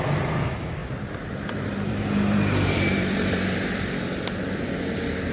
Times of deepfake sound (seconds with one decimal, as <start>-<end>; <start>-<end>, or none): 0.8-4.0